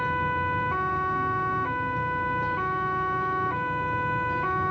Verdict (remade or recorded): recorded